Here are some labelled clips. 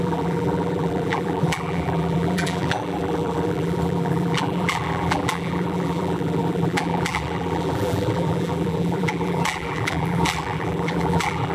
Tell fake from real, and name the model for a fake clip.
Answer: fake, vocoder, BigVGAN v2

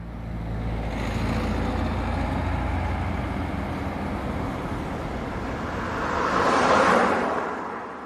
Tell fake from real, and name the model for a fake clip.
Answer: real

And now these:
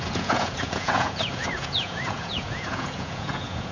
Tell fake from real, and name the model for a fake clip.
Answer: fake, vocoder, Vocos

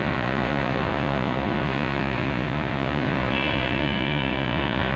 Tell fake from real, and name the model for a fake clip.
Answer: fake, vocoder, Vocos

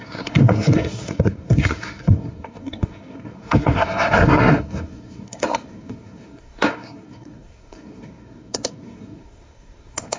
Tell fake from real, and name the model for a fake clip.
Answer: fake, codec, SNAC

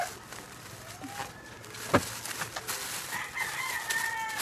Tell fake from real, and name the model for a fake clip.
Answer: real